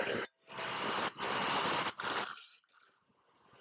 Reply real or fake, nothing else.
real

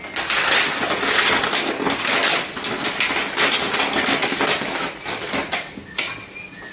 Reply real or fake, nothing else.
real